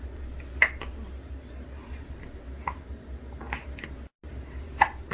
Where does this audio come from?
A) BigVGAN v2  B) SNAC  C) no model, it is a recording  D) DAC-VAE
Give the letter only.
C